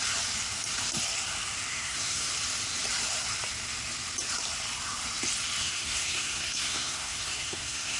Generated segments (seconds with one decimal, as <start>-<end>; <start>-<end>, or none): 1.7-2.3; 5.6-8.0